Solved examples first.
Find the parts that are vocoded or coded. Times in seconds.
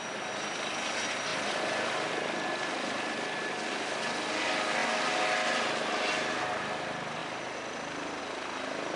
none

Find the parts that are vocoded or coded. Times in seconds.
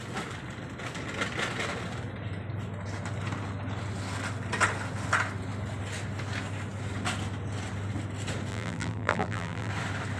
8.5-9.7 (vocoder, BigVGAN v2)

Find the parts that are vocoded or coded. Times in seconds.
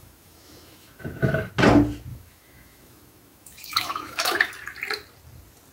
0.0-1.5 (autoencoder, DAC-VAE); 2.1-4.5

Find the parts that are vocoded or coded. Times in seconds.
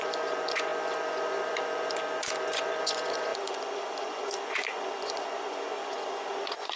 0.0-6.8 (vocoder, Vocos)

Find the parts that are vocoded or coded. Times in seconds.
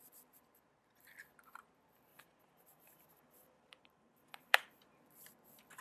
2.1-5.0 (vocoder, BigVGAN v2)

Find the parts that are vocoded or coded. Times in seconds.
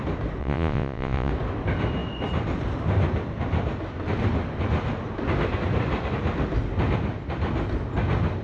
0.4-1.3 (vocoder, Vocos)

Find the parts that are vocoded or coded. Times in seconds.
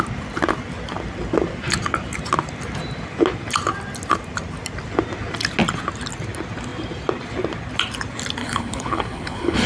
8.4-9.7 (codec, HILCodec)